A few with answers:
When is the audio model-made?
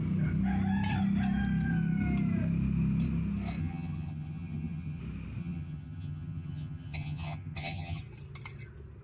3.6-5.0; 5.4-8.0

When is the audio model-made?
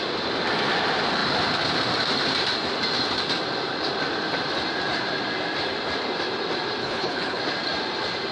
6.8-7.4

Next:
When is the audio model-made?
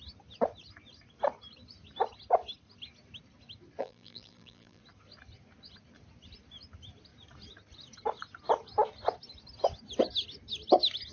3.8-4.8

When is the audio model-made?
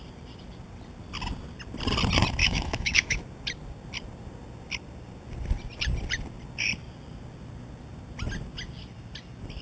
2.4-3.2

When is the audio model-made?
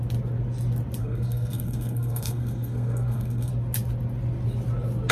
1.0-3.5